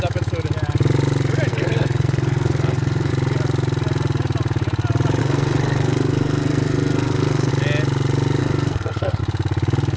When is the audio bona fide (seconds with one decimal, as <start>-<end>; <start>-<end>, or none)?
0.0-1.5; 3.1-5.2; 7.5-8.4; 9.2-10.0